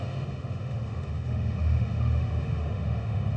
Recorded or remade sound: remade